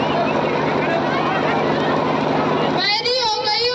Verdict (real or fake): real